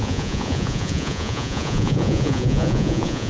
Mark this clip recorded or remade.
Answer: remade